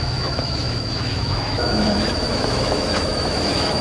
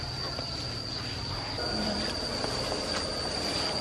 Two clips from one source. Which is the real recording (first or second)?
second